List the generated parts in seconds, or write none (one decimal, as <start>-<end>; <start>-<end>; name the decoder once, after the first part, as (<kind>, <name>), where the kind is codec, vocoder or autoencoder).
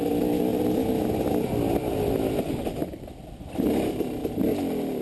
none